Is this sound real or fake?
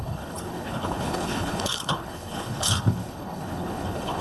fake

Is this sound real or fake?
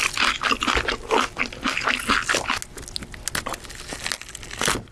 real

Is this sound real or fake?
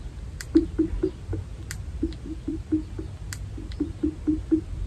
real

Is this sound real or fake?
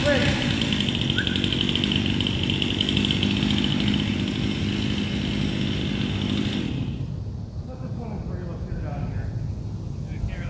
real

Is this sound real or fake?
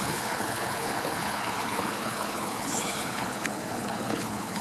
fake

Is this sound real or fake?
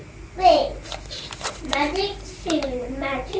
real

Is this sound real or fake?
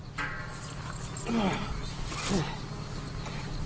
real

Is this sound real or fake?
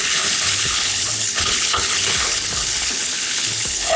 fake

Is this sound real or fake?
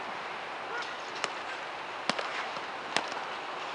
real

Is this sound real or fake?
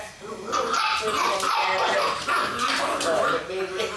real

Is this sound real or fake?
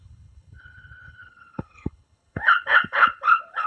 fake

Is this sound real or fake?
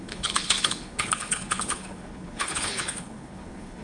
fake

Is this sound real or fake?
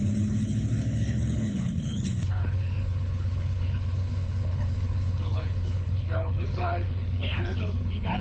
fake